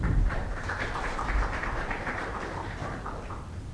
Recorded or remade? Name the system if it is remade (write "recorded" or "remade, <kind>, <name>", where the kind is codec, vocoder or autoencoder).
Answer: remade, vocoder, BigVGAN v2